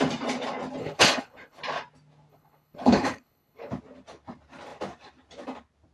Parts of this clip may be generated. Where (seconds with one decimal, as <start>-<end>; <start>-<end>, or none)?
0.8-1.6; 2.3-3.7